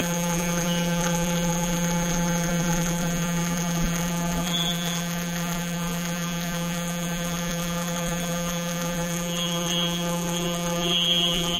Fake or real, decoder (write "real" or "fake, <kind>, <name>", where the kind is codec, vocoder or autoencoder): fake, vocoder, BigVGAN v2